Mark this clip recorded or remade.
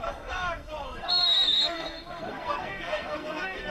remade